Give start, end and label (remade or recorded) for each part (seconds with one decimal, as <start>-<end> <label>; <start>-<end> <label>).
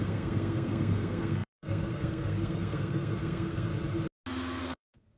0.0-3.7 remade; 3.7-4.6 recorded; 4.6-5.2 remade